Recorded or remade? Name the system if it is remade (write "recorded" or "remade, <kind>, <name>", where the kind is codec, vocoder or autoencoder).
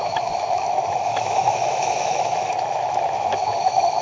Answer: remade, autoencoder, DAC-VAE